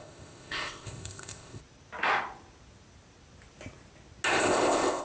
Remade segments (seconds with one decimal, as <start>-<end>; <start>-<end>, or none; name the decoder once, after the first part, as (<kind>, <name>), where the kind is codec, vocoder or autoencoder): 0.0-1.6 (codec, ZipCodec); 4.4-5.0